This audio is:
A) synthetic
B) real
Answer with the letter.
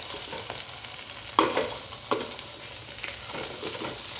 B